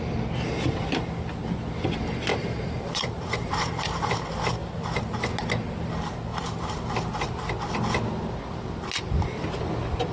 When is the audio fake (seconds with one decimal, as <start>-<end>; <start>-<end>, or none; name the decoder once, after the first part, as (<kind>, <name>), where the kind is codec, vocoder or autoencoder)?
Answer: 2.3-4.1 (vocoder, BigVGAN v2); 4.6-5.2; 6.3-7.4